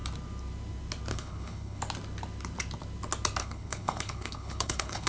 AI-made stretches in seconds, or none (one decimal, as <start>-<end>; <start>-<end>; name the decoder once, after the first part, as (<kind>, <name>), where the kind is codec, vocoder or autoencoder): 1.1-1.8 (codec, HILCodec); 3.4-5.1

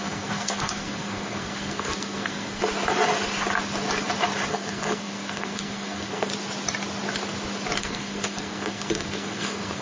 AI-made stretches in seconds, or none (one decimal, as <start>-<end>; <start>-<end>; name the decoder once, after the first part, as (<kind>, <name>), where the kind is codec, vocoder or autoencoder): 0.0-2.6 (codec, SNAC); 4.5-6.3; 7.8-9.8

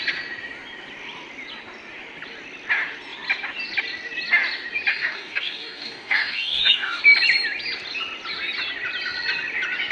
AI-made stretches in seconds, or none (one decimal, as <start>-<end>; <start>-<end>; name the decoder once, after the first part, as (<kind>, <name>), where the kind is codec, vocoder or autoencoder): 4.9-7.0 (codec, DAC)

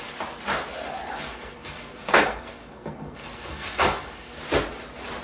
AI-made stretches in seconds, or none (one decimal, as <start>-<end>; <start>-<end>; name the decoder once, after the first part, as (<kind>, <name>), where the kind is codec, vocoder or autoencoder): 1.3-4.4 (codec, SNAC)